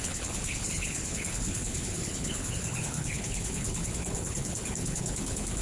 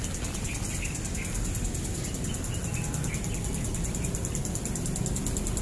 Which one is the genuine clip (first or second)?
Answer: second